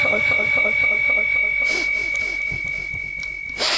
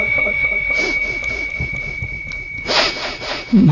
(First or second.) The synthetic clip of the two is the second